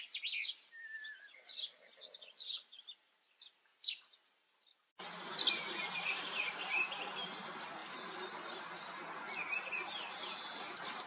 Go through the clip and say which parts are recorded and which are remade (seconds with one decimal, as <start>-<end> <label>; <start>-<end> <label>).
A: 0.0-11.1 recorded